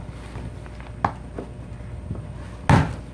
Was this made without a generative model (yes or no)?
yes